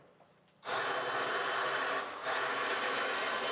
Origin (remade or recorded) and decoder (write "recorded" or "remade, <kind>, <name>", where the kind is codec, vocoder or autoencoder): recorded